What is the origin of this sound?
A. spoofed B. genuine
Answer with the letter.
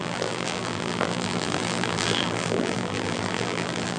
A